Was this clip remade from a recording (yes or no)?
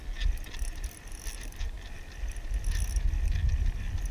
no